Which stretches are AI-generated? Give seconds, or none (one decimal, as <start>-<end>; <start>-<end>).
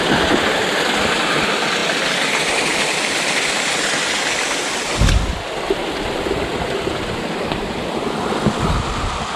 none